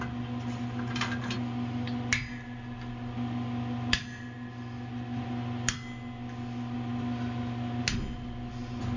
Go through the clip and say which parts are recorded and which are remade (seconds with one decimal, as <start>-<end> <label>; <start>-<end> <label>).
0.0-9.0 recorded